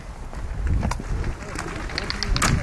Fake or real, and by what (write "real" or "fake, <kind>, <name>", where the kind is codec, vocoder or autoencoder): real